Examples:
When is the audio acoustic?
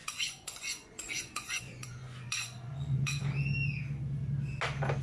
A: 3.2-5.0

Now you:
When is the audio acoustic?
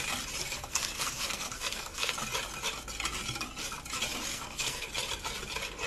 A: 0.0-0.4; 2.1-4.3; 4.9-5.9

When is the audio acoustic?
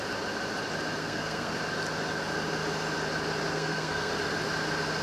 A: 0.0-1.0; 1.5-3.5; 4.1-5.0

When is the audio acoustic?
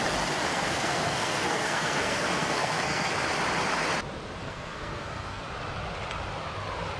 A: 0.0-0.5; 3.1-4.4; 5.4-7.0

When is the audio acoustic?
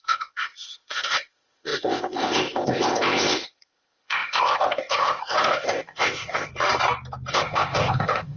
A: 6.5-7.3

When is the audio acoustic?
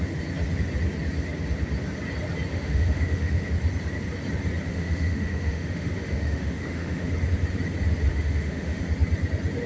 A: 0.0-2.5; 3.5-4.7; 7.1-8.1; 8.8-9.7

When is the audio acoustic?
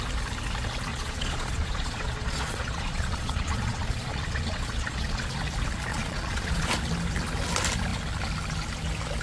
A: 0.0-0.9; 5.4-5.9; 6.7-9.2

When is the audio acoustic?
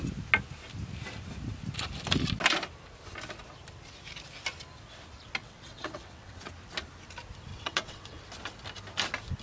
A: 0.0-5.4; 6.5-7.5; 8.2-9.4